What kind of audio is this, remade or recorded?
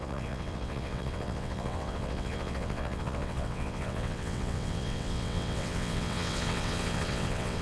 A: remade